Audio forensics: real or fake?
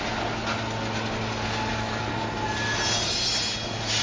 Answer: real